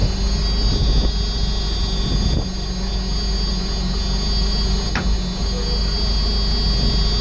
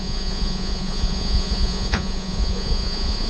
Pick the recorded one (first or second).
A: first